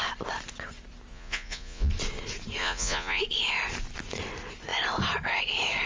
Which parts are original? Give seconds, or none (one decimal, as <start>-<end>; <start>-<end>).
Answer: 0.0-1.1; 1.9-2.6; 3.2-5.9